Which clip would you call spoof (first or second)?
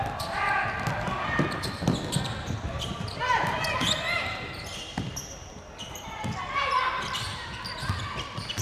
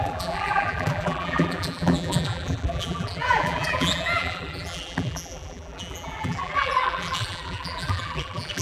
second